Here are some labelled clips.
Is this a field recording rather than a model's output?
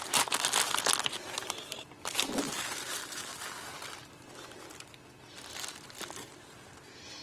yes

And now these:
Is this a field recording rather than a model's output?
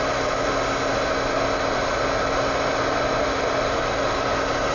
yes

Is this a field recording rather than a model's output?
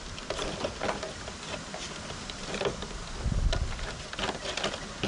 yes